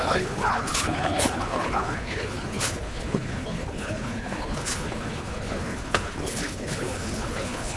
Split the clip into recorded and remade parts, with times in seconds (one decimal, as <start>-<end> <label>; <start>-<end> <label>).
0.0-7.8 remade